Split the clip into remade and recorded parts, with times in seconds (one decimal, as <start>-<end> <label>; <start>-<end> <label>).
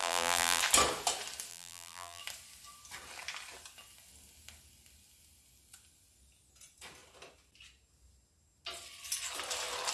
0.0-0.6 remade; 0.6-1.5 recorded; 1.5-2.2 remade; 2.2-9.9 recorded